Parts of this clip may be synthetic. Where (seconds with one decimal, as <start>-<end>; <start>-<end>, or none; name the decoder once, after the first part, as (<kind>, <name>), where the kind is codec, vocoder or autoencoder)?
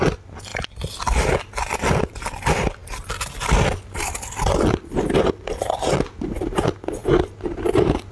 none